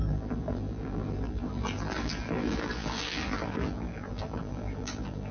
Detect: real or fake fake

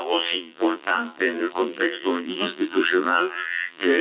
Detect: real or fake fake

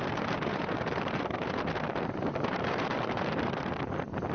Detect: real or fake fake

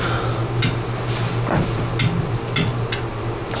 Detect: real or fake real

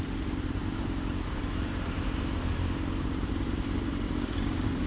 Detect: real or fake fake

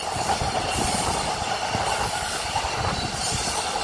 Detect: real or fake real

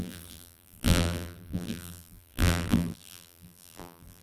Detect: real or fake fake